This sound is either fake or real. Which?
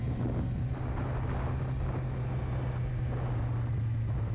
real